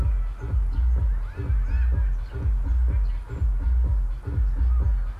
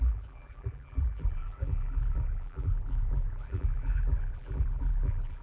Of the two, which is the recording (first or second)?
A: first